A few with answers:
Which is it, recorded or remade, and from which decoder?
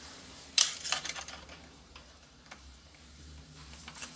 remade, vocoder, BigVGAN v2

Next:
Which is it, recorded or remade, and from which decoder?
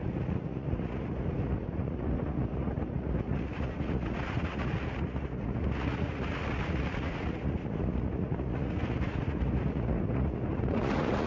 remade, vocoder, Vocos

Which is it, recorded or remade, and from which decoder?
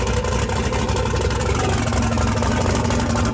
recorded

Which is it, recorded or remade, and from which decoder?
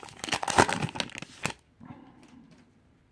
recorded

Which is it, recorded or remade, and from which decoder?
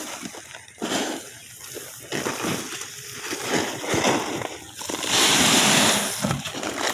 recorded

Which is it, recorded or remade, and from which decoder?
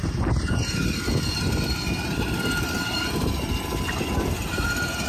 recorded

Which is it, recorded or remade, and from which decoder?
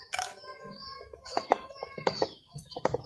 remade, autoencoder, DAC-VAE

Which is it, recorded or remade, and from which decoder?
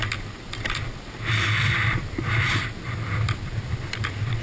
recorded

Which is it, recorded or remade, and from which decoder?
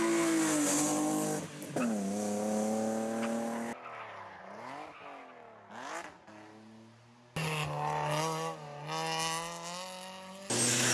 recorded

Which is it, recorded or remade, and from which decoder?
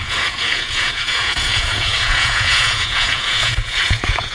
remade, vocoder, Vocos